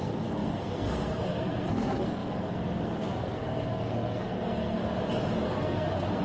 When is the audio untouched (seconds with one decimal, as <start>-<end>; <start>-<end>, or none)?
4.8-5.4